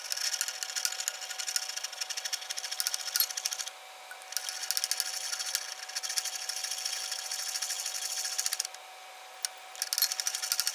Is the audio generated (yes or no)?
no